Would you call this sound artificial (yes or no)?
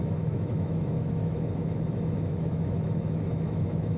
yes